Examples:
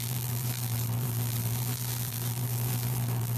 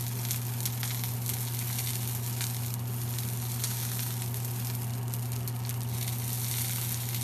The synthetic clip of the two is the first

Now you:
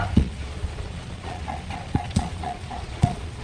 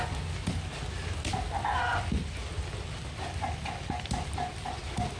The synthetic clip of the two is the first